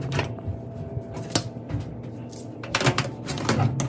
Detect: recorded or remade recorded